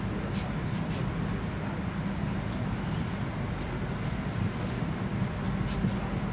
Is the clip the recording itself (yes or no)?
yes